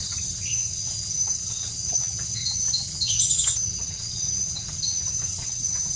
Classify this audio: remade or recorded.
remade